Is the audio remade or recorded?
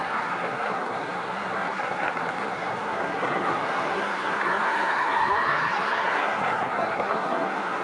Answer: remade